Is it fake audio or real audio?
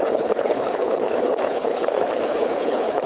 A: fake